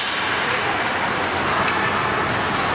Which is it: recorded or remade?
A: recorded